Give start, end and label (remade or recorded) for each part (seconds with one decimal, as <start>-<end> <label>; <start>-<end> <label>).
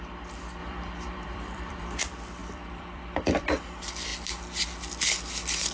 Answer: 0.0-0.6 recorded; 0.6-2.0 remade; 2.0-2.4 recorded; 2.4-3.4 remade; 3.4-5.7 recorded